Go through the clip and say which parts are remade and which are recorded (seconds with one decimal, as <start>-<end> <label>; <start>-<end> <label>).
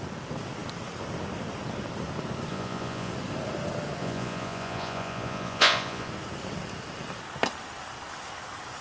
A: 0.0-2.5 recorded; 2.5-3.1 remade; 3.1-4.0 recorded; 4.0-6.1 remade; 6.1-8.8 recorded